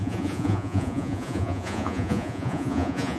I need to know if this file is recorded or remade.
remade